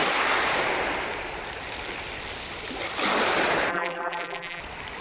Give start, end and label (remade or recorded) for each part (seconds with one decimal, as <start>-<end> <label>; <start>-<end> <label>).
0.0-3.7 recorded; 3.7-4.6 remade; 4.6-5.0 recorded